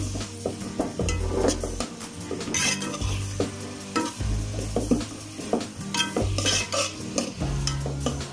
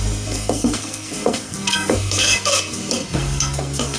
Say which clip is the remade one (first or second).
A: second